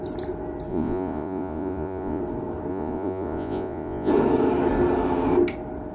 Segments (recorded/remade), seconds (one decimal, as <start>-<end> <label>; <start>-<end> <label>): 0.0-0.7 recorded; 0.7-2.2 remade; 2.2-2.7 recorded; 2.7-4.1 remade; 4.1-5.9 recorded